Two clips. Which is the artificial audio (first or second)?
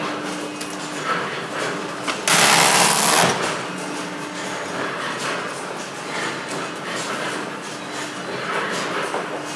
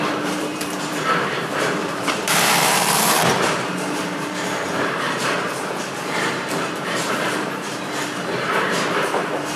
second